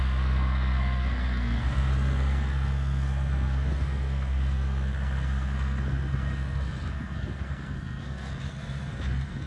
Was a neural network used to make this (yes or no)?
yes